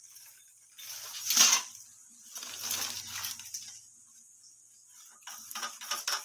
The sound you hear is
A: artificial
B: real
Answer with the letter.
B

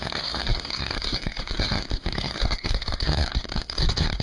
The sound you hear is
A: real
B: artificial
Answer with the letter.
B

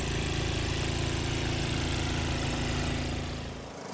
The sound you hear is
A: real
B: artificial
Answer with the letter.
A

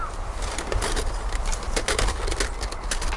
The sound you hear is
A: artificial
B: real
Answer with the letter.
B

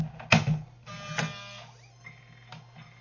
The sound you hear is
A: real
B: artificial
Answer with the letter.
A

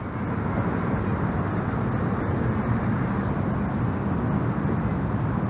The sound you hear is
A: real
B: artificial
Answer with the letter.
A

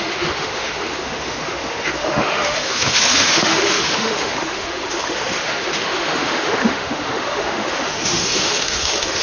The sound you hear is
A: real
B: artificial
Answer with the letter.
B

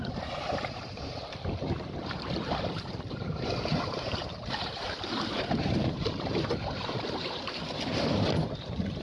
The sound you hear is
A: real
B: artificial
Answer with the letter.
B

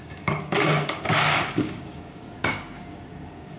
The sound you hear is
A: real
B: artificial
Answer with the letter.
B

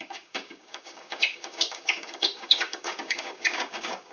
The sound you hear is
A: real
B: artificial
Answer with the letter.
B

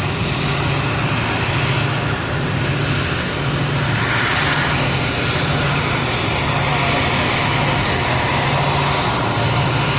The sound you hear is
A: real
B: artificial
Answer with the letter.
A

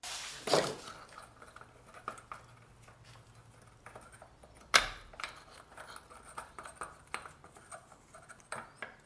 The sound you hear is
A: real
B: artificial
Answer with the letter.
A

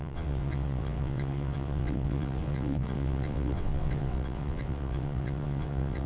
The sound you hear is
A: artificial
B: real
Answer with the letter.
A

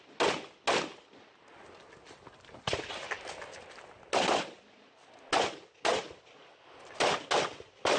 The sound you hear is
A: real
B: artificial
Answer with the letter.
A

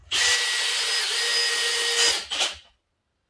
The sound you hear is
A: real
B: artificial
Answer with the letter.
A